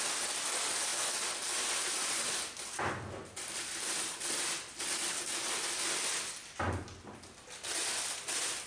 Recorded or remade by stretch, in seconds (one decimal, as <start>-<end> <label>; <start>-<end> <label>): 0.0-8.7 recorded

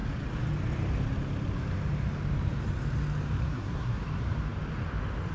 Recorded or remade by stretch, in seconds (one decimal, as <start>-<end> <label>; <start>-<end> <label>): 0.0-3.5 recorded; 3.5-4.0 remade; 4.0-5.3 recorded

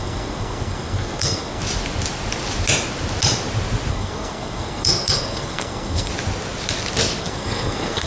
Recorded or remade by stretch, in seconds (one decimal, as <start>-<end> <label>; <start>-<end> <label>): 0.0-1.6 remade; 1.6-3.9 recorded; 3.9-6.1 remade; 6.1-7.2 recorded; 7.2-8.1 remade

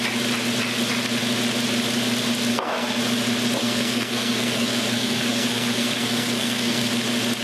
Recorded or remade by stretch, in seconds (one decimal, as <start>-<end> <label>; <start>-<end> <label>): 0.0-2.5 recorded; 2.5-3.0 remade; 3.0-3.6 recorded; 3.6-6.9 remade; 6.9-7.4 recorded

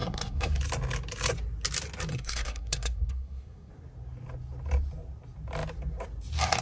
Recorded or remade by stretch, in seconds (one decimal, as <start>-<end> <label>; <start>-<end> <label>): 0.0-0.6 remade; 0.6-2.1 recorded; 2.1-3.7 remade; 3.7-6.6 recorded

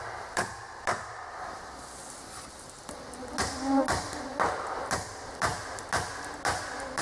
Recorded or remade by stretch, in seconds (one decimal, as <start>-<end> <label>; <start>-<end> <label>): 0.0-7.0 recorded